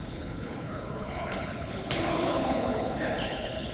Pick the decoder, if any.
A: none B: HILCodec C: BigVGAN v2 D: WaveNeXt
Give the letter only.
B